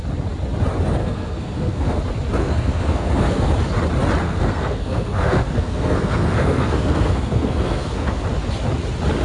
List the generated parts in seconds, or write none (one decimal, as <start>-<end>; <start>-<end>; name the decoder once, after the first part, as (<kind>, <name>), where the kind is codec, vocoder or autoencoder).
1.0-2.0 (codec, SNAC); 2.4-3.5; 4.2-8.2